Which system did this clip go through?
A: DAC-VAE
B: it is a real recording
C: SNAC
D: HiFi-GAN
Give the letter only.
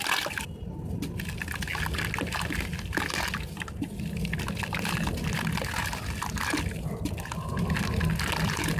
B